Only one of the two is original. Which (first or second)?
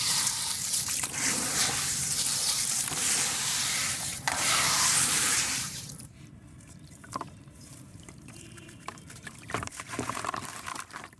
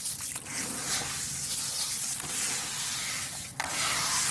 second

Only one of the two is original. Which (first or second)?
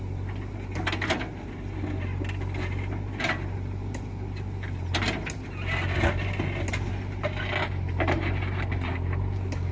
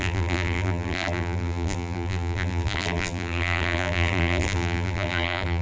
first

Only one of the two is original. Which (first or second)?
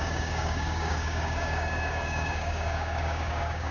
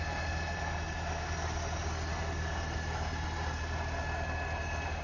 second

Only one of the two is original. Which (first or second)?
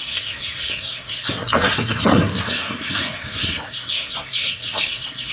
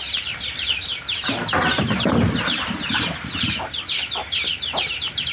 second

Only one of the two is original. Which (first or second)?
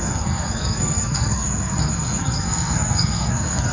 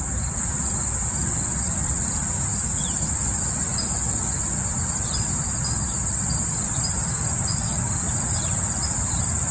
second